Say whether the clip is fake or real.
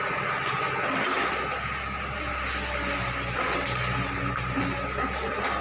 real